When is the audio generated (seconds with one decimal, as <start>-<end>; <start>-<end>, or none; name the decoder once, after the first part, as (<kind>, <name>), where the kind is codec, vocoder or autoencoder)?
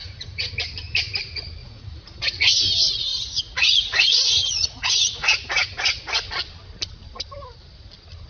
0.0-0.5 (vocoder, Vocos); 1.6-2.5; 3.1-6.3